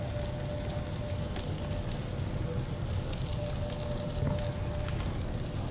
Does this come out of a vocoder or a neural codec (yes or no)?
no